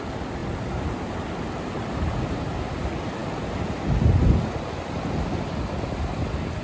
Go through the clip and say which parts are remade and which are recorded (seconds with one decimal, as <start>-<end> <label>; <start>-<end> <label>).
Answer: 0.0-6.6 recorded